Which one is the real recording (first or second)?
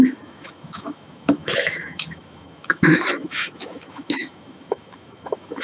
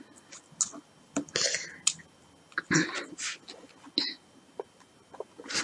second